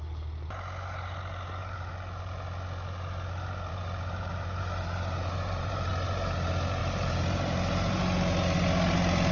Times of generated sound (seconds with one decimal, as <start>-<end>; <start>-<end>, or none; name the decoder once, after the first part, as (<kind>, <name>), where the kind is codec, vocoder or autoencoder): 1.6-2.3 (vocoder, BigVGAN v2); 3.7-5.9; 6.8-8.0

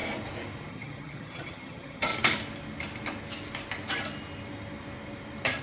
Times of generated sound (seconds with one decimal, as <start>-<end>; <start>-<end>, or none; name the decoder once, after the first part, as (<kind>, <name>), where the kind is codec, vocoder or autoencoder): 0.7-2.1 (vocoder, HiFi-GAN)

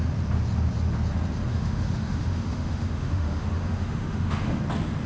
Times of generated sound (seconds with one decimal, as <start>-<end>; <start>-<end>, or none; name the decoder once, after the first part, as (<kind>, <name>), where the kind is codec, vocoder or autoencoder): 1.5-4.6 (autoencoder, DAC-VAE)

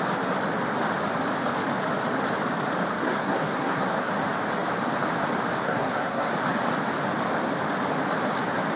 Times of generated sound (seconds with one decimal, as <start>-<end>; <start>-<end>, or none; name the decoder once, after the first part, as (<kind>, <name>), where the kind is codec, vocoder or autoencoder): 2.9-4.1 (codec, SNAC); 5.6-6.3

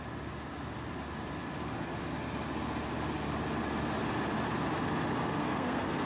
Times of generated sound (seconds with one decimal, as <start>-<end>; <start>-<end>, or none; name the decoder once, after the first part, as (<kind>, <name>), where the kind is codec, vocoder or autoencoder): 5.4-6.1 (codec, SNAC)

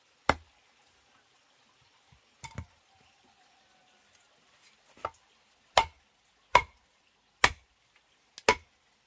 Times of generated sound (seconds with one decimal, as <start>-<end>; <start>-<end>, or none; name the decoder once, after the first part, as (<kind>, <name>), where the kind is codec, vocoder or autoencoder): none